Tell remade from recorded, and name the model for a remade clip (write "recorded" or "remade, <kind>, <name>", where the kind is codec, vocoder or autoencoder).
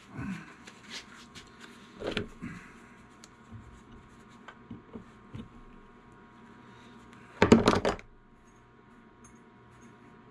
remade, vocoder, BigVGAN v2